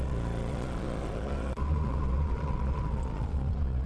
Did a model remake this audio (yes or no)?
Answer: yes